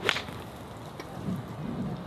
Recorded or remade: recorded